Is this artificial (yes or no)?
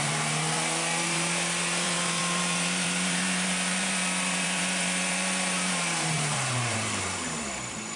yes